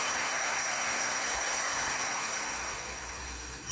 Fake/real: fake